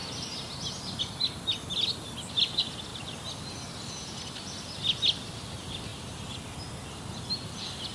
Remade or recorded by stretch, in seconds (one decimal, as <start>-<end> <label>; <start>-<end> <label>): 0.0-7.9 recorded